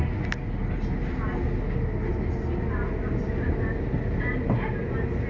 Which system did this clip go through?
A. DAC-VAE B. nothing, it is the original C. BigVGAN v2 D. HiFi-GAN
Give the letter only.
B